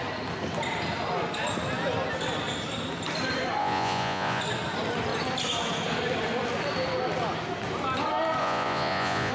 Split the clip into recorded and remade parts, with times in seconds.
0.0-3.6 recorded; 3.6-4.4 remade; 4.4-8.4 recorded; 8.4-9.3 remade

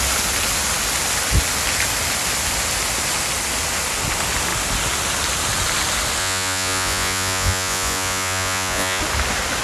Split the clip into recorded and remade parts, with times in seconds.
0.0-6.2 recorded; 6.2-9.0 remade; 9.0-9.6 recorded

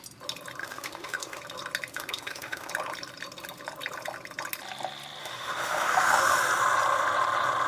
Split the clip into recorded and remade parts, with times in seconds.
0.0-0.6 recorded; 0.6-1.4 remade; 1.4-1.9 recorded; 1.9-2.7 remade; 2.7-5.2 recorded; 5.2-6.4 remade; 6.4-7.7 recorded

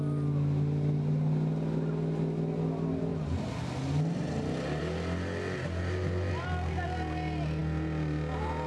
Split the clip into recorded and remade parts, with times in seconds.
0.0-8.7 recorded

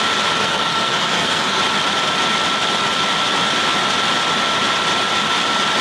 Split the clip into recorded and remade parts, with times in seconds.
0.0-0.4 recorded; 0.4-1.6 remade; 1.6-5.8 recorded

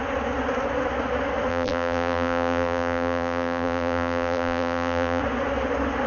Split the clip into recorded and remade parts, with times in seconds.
0.0-1.5 recorded; 1.5-5.2 remade; 5.2-6.1 recorded

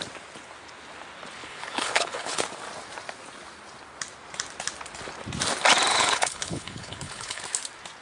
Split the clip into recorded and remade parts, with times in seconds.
0.0-1.4 recorded; 1.4-2.4 remade; 2.4-5.9 recorded; 5.9-7.4 remade; 7.4-8.0 recorded

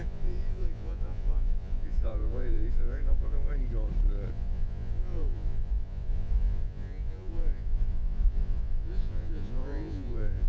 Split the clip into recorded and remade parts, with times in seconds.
0.0-3.5 remade; 3.5-4.3 recorded; 4.3-10.5 remade